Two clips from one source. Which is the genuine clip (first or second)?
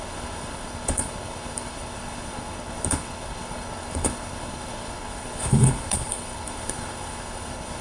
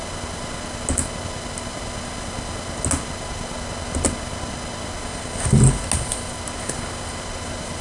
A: second